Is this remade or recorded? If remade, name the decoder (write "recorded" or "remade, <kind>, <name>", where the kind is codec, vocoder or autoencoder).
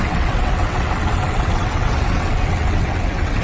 remade, vocoder, WaveNeXt